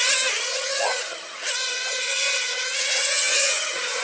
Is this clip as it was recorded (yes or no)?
no